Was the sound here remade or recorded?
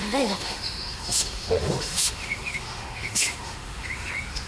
remade